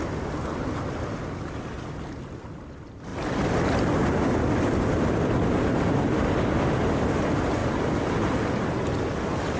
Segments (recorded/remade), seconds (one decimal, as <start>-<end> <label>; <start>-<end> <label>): 0.0-9.6 recorded